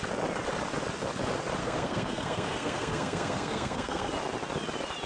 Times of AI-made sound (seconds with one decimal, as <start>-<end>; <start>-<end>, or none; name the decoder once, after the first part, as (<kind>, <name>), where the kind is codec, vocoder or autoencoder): 1.6-4.1 (codec, SNAC)